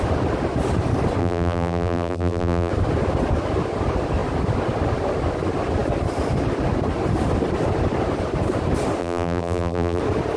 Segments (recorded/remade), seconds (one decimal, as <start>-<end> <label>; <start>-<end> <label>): 0.0-1.2 recorded; 1.2-2.7 remade; 2.7-9.0 recorded; 9.0-10.0 remade; 10.0-10.4 recorded

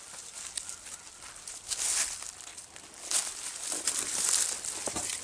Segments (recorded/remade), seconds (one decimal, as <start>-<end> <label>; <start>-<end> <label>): 0.0-5.2 recorded

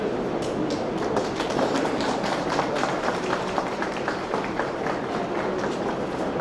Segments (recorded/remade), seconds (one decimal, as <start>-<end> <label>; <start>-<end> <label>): 0.0-1.2 recorded; 1.2-5.0 remade; 5.0-6.4 recorded

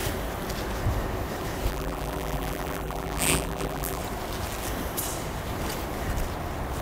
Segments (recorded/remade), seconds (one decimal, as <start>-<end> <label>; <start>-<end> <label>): 0.0-1.7 recorded; 1.7-4.0 remade; 4.0-6.8 recorded

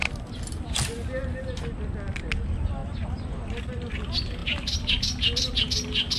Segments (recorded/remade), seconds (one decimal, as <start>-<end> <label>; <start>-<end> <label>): 0.0-6.2 recorded

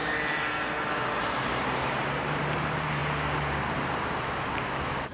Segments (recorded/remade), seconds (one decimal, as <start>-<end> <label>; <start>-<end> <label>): 0.0-1.2 recorded; 1.2-3.0 remade; 3.0-3.7 recorded; 3.7-5.1 remade

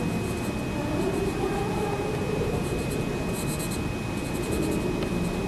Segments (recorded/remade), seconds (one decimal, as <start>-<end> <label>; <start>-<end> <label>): 0.0-0.8 recorded; 0.8-2.7 remade; 2.7-5.5 recorded